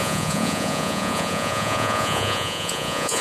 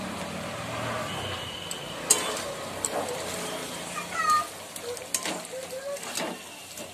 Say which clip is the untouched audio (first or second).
second